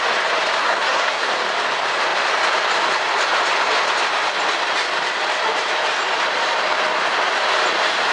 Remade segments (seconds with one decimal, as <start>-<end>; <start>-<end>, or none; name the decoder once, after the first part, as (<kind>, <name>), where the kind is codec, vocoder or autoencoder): 0.6-1.3 (codec, SNAC)